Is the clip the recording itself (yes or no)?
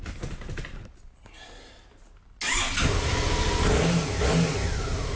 yes